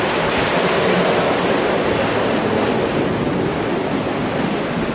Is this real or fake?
real